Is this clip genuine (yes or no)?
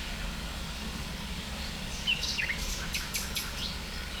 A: no